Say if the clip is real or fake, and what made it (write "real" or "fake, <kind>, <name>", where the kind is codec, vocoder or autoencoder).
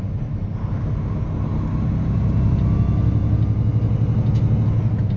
real